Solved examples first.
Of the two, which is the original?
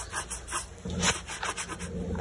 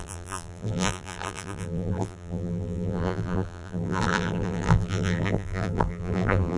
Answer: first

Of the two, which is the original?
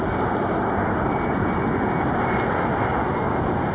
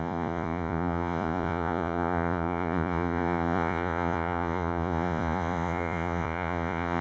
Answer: first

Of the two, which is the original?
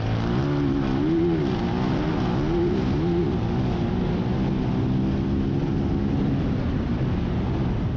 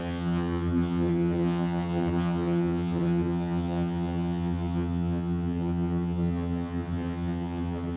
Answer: first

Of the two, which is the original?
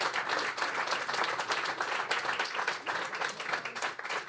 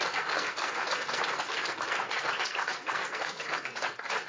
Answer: first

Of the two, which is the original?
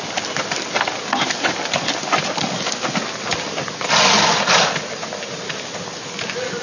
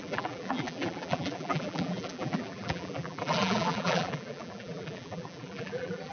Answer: first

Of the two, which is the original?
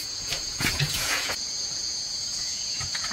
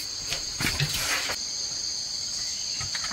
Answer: second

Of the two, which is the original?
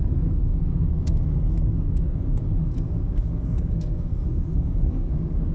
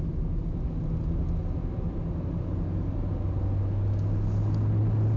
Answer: second